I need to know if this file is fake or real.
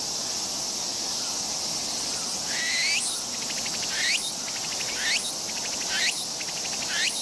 real